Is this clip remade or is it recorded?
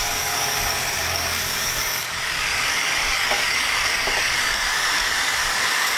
remade